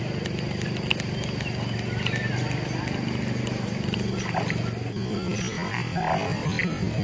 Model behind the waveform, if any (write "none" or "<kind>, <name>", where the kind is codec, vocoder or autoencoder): none